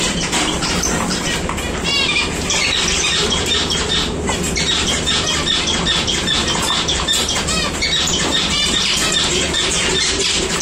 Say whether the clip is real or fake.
fake